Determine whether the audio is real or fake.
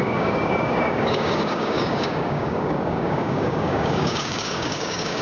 fake